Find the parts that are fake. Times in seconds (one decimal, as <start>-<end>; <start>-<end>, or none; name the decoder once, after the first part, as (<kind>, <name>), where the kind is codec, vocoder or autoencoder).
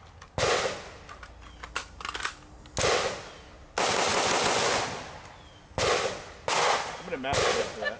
4.1-4.8 (vocoder, Vocos)